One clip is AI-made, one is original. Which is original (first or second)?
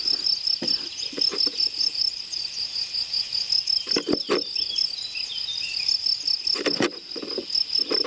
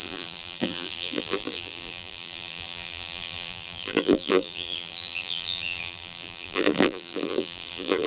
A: first